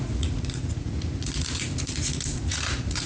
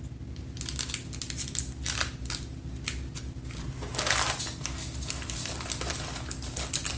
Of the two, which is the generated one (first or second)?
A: first